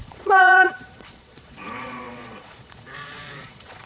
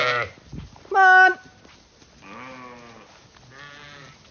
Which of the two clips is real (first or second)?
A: second